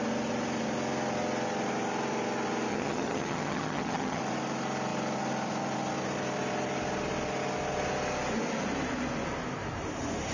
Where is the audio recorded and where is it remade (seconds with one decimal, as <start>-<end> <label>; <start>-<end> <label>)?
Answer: 0.0-2.7 recorded; 2.7-4.2 remade; 4.2-10.3 recorded